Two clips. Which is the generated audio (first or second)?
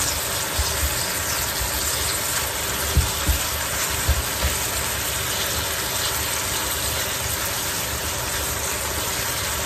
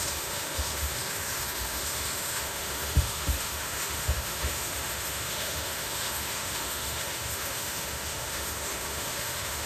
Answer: second